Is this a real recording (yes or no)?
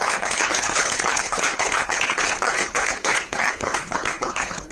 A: no